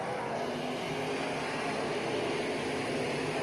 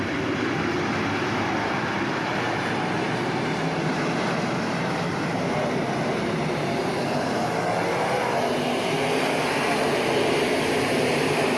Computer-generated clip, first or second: second